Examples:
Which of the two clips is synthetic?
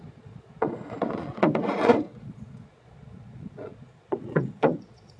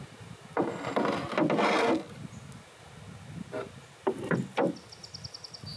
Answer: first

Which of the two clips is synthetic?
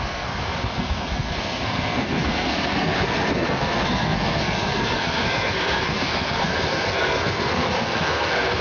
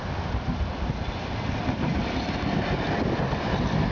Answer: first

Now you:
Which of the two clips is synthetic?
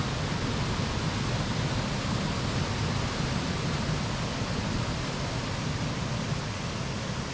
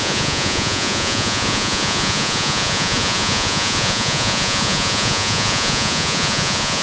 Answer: second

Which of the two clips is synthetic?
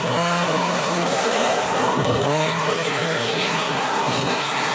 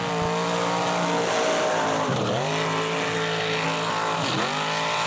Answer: first